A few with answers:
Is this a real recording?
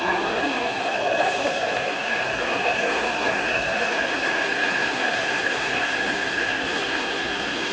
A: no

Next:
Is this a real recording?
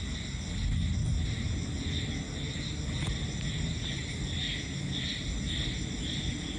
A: yes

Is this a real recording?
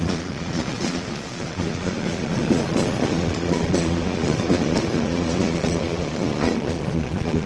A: no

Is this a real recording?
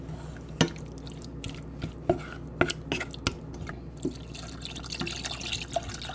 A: yes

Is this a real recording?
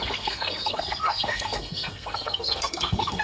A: no